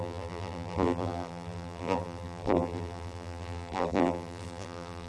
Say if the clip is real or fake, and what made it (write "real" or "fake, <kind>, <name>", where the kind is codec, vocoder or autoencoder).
fake, vocoder, BigVGAN v2